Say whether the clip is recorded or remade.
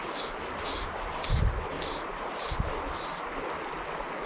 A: recorded